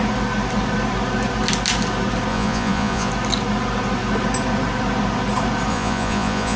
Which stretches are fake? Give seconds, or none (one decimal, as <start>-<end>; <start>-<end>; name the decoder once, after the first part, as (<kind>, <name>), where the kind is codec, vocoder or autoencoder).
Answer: 2.3-3.1 (vocoder, Vocos); 5.7-6.6